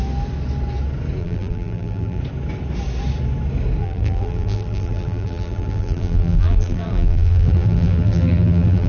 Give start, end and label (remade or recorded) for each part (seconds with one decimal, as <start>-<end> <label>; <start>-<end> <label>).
0.0-1.2 recorded; 1.2-2.2 remade; 2.2-3.8 recorded; 3.8-8.9 remade